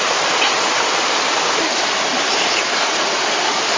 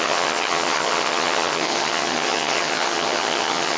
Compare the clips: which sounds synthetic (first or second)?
second